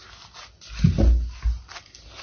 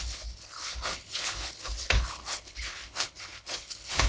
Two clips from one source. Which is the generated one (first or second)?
second